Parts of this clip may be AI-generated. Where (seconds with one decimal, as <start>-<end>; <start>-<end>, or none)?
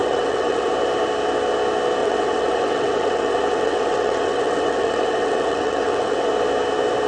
0.0-0.7; 2.0-6.3